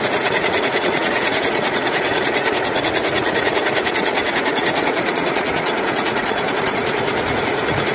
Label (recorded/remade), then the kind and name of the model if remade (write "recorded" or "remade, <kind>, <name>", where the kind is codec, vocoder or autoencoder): remade, vocoder, Vocos